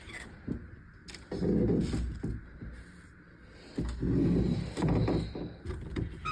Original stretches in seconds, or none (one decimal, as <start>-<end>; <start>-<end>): 0.0-6.3